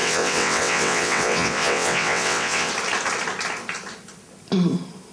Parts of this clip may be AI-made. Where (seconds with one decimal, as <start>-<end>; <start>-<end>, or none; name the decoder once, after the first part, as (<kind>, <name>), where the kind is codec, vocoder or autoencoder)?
0.0-2.7 (vocoder, WaveNeXt)